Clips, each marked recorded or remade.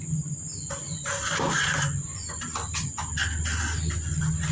recorded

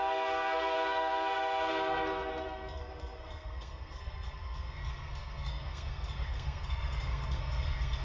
remade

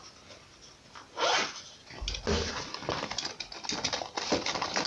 recorded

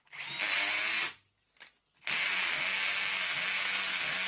recorded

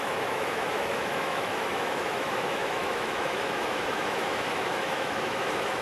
remade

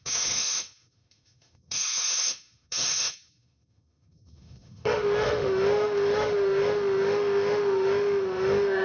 remade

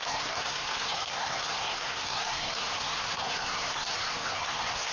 remade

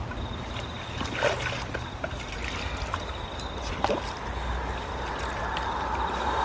recorded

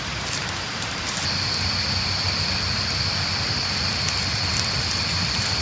recorded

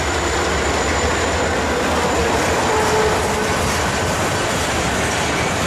recorded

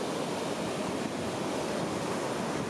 recorded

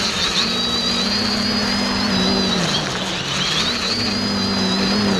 recorded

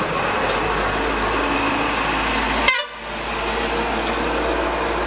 recorded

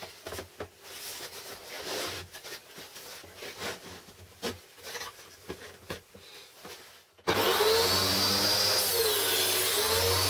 recorded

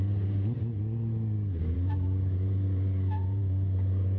remade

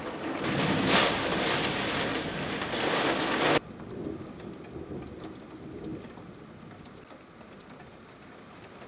recorded